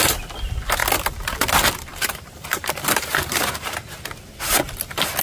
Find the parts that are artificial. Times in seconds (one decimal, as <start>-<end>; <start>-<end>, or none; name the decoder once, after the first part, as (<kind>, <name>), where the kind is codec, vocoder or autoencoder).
1.9-3.3 (vocoder, BigVGAN v2)